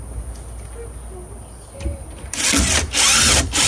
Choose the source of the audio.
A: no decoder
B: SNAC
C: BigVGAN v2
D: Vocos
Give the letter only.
A